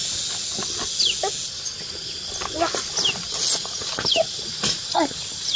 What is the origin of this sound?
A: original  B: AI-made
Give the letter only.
A